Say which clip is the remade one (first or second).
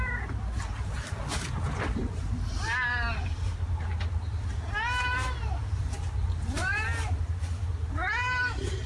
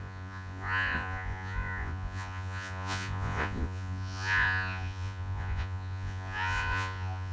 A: second